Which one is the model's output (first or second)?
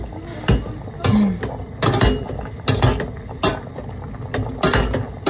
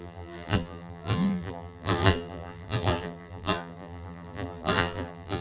second